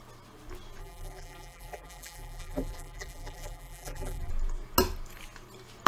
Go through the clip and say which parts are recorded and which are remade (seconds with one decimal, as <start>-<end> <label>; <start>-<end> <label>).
0.0-0.8 recorded; 0.8-4.3 remade; 4.3-5.9 recorded